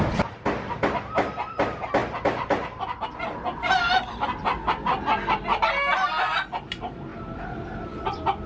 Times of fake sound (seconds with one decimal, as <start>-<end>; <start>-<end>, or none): none